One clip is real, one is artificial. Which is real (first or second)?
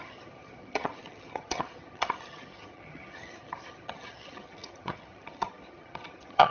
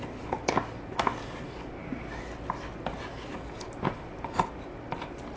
second